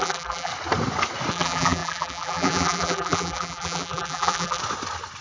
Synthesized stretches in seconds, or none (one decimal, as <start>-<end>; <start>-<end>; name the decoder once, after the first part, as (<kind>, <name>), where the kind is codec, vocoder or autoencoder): 0.0-0.5 (vocoder, BigVGAN v2); 1.3-4.6